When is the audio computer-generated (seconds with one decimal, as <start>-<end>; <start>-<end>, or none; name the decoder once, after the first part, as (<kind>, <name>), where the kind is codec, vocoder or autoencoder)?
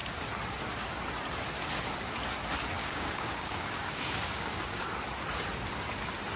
2.8-4.8 (codec, DAC)